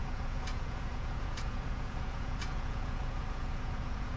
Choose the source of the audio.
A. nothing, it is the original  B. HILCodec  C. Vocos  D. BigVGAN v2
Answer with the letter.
C